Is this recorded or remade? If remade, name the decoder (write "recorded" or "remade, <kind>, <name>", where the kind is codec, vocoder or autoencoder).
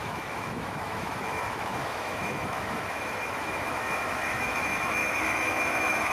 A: remade, autoencoder, DAC-VAE